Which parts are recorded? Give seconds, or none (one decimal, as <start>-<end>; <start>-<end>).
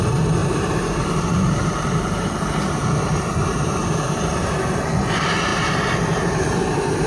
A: 0.0-0.4; 4.7-5.5